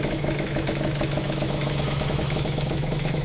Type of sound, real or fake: fake